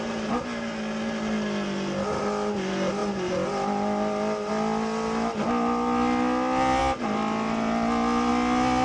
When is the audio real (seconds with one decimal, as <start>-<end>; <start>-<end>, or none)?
0.0-8.8